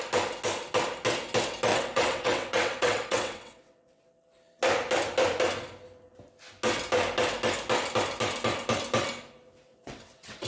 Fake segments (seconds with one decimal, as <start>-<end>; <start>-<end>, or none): 1.7-4.0; 9.7-10.5

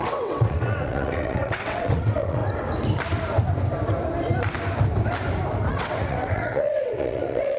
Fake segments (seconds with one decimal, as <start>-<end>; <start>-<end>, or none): 0.0-2.4; 5.7-7.6

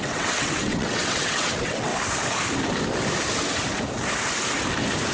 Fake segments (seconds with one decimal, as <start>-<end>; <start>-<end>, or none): 0.0-1.9